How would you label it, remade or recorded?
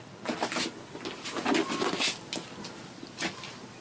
recorded